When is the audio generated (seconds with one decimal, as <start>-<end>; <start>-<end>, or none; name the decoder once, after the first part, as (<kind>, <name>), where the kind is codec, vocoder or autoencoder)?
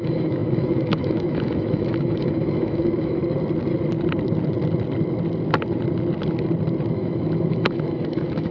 0.0-3.2 (autoencoder, DAC-VAE); 6.9-8.5